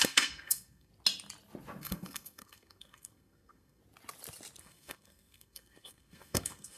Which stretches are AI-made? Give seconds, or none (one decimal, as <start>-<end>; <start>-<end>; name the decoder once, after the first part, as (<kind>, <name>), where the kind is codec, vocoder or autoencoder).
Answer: 0.0-0.9 (codec, SNAC); 1.8-3.8; 4.6-6.8